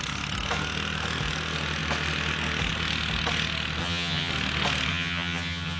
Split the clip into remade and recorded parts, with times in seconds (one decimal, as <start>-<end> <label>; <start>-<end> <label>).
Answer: 0.0-3.8 recorded; 3.8-4.3 remade; 4.3-4.9 recorded; 4.9-5.8 remade

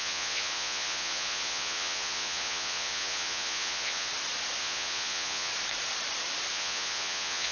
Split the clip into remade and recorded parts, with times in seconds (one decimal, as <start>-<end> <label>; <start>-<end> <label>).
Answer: 0.0-4.1 remade; 4.1-4.6 recorded; 4.6-5.5 remade; 5.5-6.5 recorded; 6.5-7.5 remade

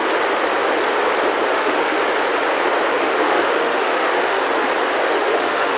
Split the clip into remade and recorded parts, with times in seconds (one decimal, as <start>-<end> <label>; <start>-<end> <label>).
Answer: 0.0-1.5 recorded; 1.5-2.0 remade; 2.0-2.9 recorded; 2.9-4.4 remade; 4.4-5.0 recorded; 5.0-5.8 remade

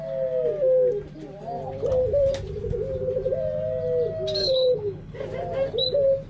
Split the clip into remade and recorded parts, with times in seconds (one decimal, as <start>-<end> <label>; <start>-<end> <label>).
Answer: 0.0-4.4 recorded; 4.4-5.2 remade; 5.2-6.3 recorded

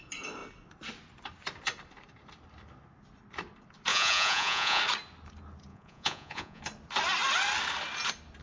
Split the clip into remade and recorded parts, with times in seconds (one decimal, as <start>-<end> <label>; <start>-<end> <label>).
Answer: 0.0-3.9 recorded; 3.9-4.8 remade; 4.8-5.7 recorded; 5.7-6.6 remade; 6.6-8.4 recorded